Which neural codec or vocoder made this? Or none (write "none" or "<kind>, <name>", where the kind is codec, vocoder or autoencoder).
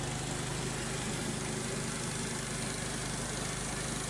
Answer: none